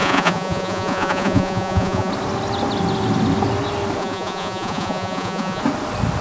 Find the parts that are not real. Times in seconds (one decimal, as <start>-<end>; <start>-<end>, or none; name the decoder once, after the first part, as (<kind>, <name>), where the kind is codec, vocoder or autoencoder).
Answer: 0.0-2.1 (vocoder, Vocos); 4.0-5.6